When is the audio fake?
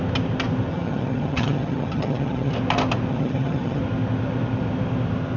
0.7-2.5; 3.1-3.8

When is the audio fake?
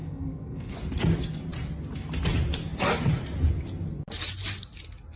0.0-0.7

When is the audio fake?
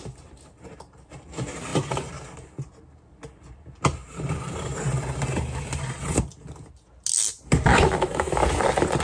7.7-8.4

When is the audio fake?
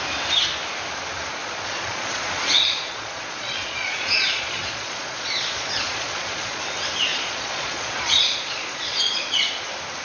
1.4-6.6; 7.1-9.5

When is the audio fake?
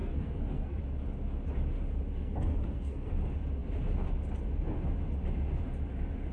0.0-0.8; 2.1-3.1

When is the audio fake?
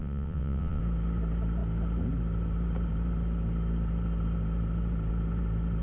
0.0-0.8